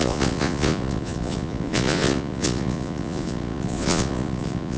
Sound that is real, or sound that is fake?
fake